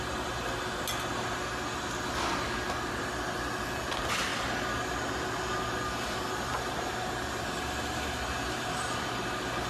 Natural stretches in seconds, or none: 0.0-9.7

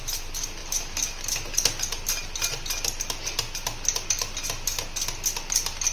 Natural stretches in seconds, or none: 0.0-5.9

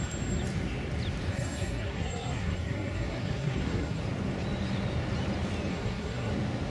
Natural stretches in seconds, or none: 0.0-1.3; 4.0-5.7; 6.3-6.7

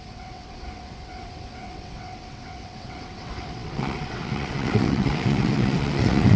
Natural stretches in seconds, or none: none

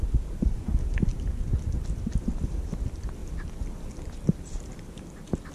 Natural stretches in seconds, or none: 0.0-5.5